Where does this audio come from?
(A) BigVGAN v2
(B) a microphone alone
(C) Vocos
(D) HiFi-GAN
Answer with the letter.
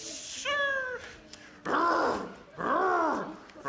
B